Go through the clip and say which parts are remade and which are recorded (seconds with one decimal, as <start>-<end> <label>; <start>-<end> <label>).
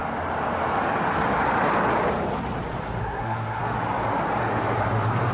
0.0-3.0 recorded; 3.0-3.6 remade; 3.6-5.3 recorded